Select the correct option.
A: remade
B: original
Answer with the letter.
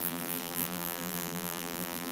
A